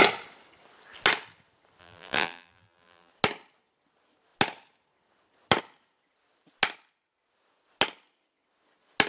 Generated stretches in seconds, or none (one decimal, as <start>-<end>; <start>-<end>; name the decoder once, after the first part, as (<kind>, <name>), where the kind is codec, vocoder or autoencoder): 1.8-3.1 (vocoder, BigVGAN v2)